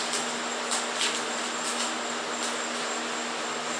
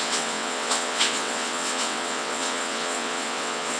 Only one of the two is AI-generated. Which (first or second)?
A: second